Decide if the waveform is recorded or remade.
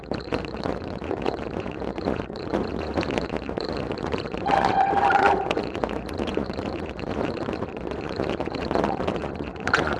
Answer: remade